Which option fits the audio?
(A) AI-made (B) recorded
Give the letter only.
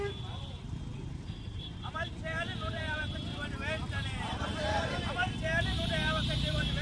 A